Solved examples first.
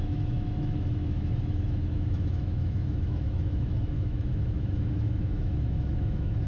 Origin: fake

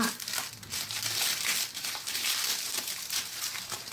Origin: fake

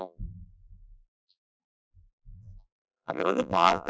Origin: fake